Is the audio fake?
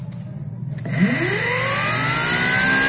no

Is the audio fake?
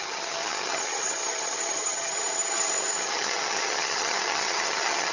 yes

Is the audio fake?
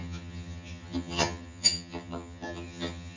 yes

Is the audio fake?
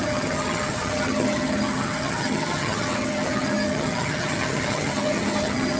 yes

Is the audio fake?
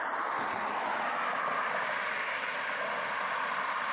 no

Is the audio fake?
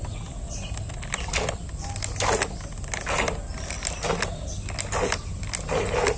no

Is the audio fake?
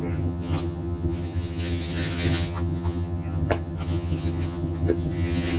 yes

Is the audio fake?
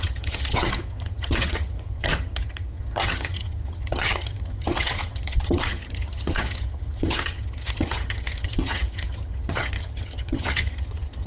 yes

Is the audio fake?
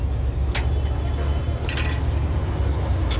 no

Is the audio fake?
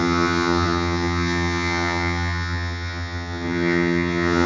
yes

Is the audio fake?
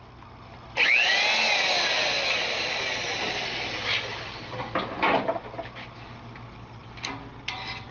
no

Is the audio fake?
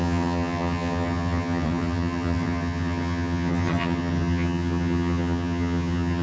yes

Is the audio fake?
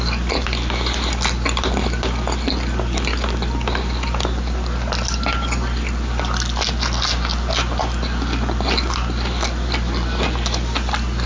no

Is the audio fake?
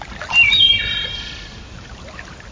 no